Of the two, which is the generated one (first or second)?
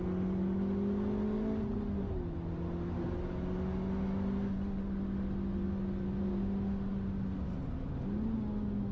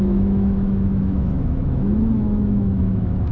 second